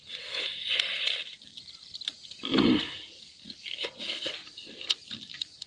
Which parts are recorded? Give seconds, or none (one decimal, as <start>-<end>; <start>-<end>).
0.9-4.3